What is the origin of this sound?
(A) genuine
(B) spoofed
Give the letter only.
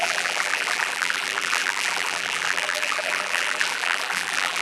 B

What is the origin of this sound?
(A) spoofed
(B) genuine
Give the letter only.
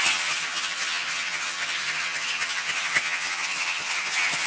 A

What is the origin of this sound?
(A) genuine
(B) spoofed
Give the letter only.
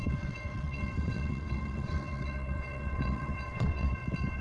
B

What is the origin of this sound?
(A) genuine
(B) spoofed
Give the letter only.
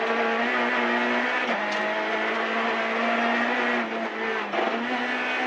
A